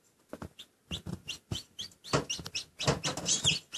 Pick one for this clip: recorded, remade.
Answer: recorded